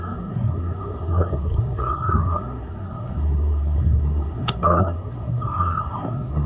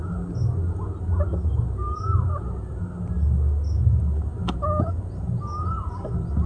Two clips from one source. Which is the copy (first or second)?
first